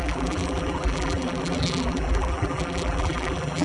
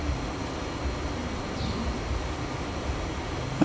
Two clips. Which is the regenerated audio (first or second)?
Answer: first